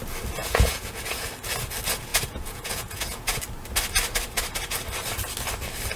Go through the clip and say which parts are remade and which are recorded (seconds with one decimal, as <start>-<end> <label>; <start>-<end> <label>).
0.0-0.4 recorded; 0.4-1.3 remade; 1.3-2.1 recorded; 2.1-3.4 remade; 3.4-6.0 recorded